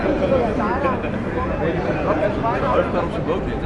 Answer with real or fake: real